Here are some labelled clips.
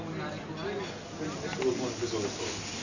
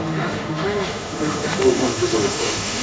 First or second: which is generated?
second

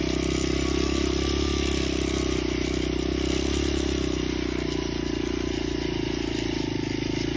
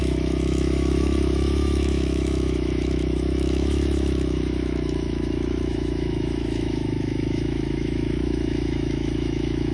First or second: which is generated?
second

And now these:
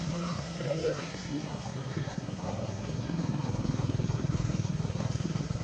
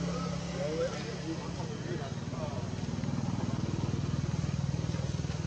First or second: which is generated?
first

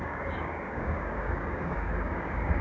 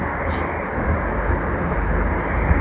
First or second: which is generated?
first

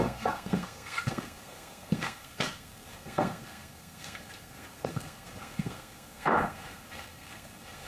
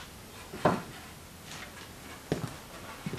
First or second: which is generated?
first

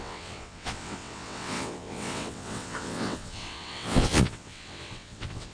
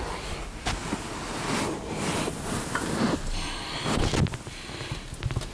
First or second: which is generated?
first